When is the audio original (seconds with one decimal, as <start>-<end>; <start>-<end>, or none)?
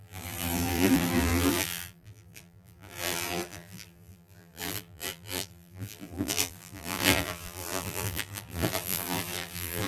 none